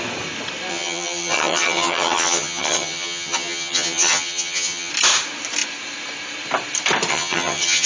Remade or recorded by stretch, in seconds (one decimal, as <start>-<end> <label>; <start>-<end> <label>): 0.0-0.7 recorded; 0.7-4.9 remade; 4.9-7.1 recorded; 7.1-7.9 remade

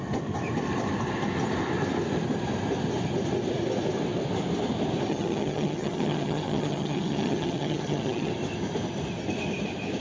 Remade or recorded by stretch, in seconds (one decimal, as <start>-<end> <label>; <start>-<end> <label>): 0.0-5.1 recorded; 5.1-8.3 remade; 8.3-10.0 recorded

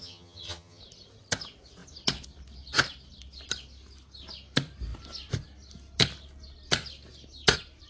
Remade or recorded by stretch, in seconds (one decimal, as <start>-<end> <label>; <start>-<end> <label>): 0.0-0.8 remade; 0.8-7.9 recorded

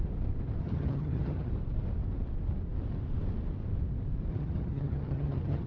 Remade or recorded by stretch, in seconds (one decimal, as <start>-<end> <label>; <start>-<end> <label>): 0.0-0.6 recorded; 0.6-1.5 remade; 1.5-4.3 recorded; 4.3-5.7 remade